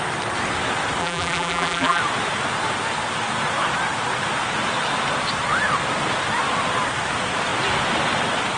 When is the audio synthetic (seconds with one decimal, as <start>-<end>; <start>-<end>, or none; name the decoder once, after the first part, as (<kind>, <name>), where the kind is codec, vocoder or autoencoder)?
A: 1.0-2.0 (vocoder, BigVGAN v2)